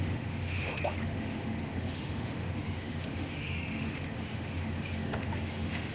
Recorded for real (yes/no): no